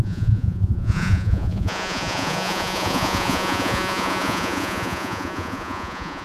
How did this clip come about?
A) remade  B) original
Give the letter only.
A